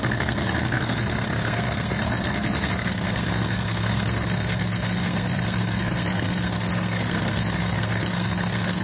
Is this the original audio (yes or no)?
no